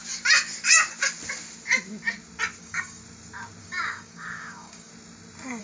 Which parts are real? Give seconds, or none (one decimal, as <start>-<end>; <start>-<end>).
0.0-2.6; 3.0-3.6; 4.9-5.6